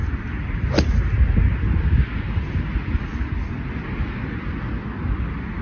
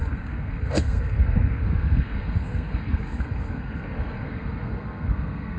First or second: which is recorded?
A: first